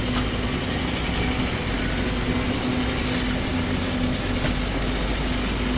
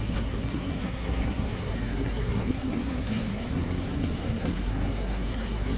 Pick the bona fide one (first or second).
first